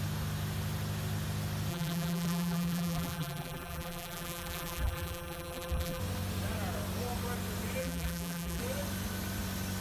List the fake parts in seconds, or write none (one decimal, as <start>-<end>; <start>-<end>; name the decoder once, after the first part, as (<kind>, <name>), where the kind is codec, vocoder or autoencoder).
1.7-6.0 (vocoder, BigVGAN v2); 7.8-8.6